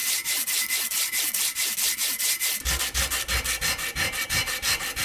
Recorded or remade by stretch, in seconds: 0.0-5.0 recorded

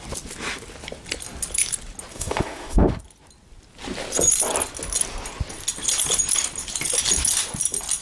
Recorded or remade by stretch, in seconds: 0.0-2.1 recorded; 2.1-3.0 remade; 3.0-8.0 recorded

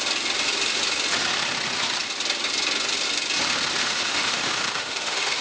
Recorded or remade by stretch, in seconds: 0.0-3.8 recorded; 3.8-5.4 remade

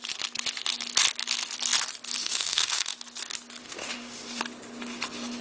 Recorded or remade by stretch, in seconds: 0.0-2.2 recorded; 2.2-2.9 remade; 2.9-3.6 recorded; 3.6-4.4 remade; 4.4-5.4 recorded